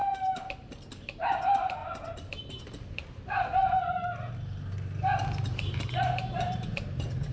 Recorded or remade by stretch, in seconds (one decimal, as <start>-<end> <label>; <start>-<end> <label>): 0.0-0.9 recorded; 0.9-1.8 remade; 1.8-2.5 recorded; 2.5-3.6 remade; 3.6-5.2 recorded; 5.2-7.3 remade